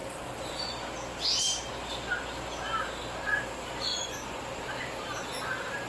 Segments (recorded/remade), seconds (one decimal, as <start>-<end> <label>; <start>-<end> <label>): 0.0-3.9 recorded; 3.9-4.4 remade; 4.4-5.9 recorded